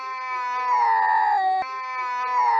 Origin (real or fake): real